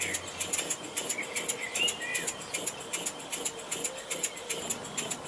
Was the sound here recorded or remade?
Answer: recorded